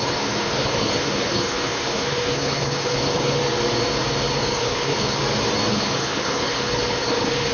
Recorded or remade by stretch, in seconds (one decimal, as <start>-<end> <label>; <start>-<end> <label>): 0.0-3.4 remade; 3.4-4.4 recorded; 4.4-5.2 remade; 5.2-5.7 recorded; 5.7-7.5 remade